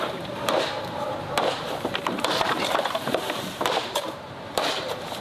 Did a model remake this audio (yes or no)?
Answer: yes